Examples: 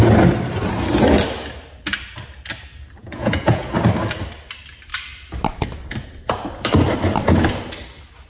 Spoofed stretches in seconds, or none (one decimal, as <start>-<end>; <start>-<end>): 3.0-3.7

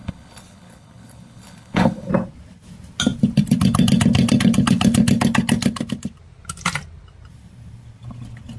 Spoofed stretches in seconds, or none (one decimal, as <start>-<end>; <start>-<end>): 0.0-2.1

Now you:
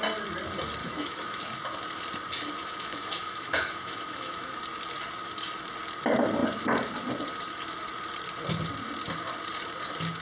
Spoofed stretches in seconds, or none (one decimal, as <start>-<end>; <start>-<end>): 0.8-1.4; 2.6-4.6